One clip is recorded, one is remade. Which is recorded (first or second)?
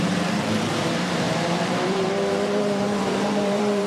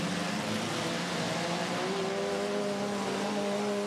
second